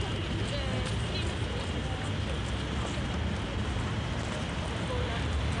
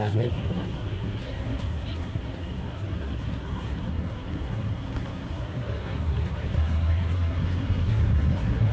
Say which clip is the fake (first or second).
second